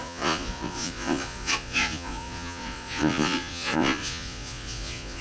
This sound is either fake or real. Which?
fake